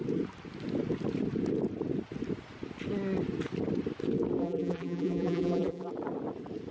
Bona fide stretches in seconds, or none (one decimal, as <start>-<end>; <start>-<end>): 0.0-4.4; 5.9-6.7